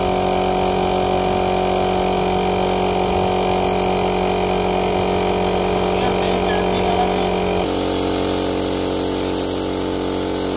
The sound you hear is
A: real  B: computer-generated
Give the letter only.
A